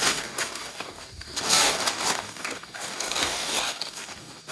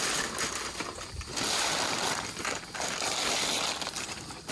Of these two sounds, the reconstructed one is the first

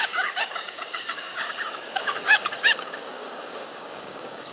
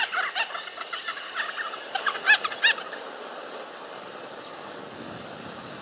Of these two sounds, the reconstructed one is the first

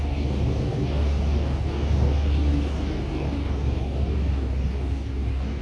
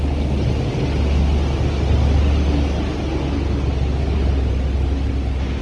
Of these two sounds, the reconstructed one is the first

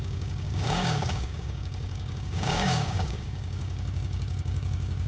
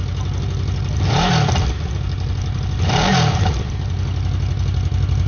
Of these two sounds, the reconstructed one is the first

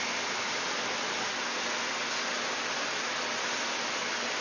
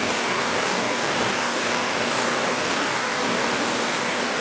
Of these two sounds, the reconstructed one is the second